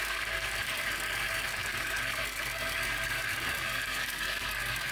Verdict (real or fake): fake